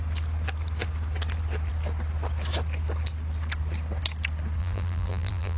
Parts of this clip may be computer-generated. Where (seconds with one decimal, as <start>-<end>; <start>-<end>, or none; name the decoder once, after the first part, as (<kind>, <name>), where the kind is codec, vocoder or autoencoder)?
4.6-5.6 (vocoder, BigVGAN v2)

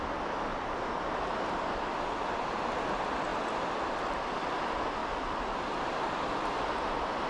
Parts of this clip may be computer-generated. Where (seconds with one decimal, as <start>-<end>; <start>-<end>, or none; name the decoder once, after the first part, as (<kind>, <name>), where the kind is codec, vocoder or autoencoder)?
0.5-1.2 (vocoder, BigVGAN v2); 5.0-6.3

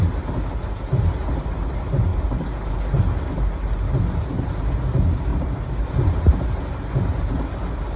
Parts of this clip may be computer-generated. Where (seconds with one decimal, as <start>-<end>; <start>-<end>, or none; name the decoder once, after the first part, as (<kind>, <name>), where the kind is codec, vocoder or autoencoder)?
2.1-2.7 (vocoder, BigVGAN v2); 5.3-6.9

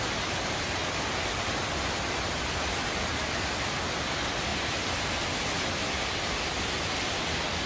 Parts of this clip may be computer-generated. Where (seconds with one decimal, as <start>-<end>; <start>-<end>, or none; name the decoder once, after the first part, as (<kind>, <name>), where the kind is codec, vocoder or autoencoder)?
0.0-0.8 (vocoder, BigVGAN v2); 2.6-4.5; 7.2-7.7